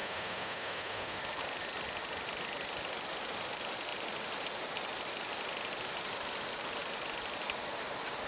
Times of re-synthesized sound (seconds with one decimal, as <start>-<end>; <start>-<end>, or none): 0.0-1.2